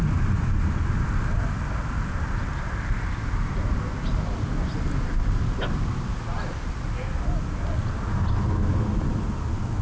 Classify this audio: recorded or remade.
recorded